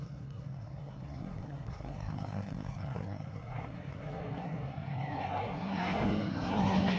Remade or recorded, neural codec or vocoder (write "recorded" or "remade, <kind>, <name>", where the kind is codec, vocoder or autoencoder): remade, codec, SNAC